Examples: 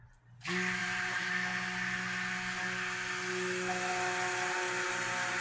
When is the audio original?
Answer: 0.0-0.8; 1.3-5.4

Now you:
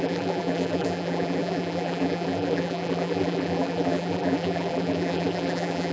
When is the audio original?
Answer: none

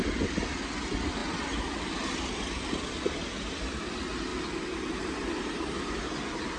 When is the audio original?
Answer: 1.2-2.2; 4.3-5.2

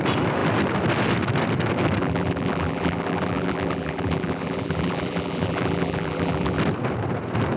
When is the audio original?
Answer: 0.0-2.0; 6.6-7.6

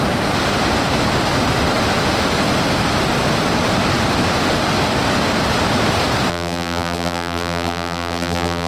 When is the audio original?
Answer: 0.0-6.3

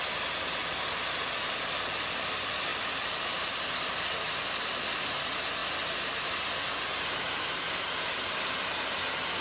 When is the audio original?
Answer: 0.0-2.7; 5.0-5.6; 6.5-6.9; 8.2-9.4